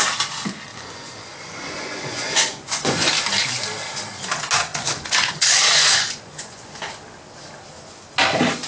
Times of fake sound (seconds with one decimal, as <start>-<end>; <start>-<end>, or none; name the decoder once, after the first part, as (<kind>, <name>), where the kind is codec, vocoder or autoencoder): 0.7-3.1 (vocoder, Vocos); 4.7-6.8